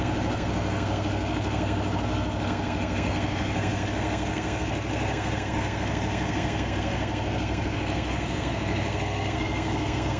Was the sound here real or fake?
fake